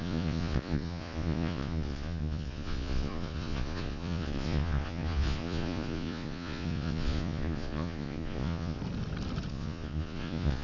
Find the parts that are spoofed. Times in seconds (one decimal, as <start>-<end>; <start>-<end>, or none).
0.0-8.8; 9.5-10.6